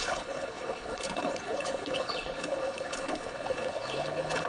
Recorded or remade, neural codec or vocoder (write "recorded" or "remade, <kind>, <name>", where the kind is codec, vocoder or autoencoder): remade, codec, HILCodec